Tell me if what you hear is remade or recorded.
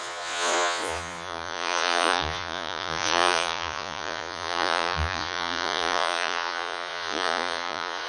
remade